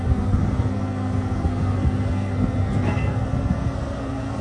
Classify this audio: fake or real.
fake